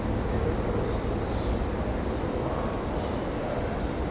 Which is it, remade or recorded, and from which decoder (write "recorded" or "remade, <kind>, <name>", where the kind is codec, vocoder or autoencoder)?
recorded